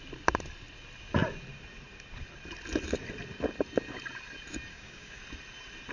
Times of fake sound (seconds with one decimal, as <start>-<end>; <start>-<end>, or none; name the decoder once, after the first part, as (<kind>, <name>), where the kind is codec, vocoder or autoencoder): 4.7-5.2 (codec, DAC)